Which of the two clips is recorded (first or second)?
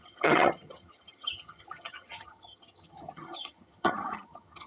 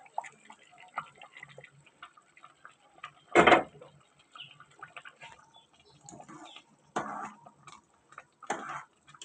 second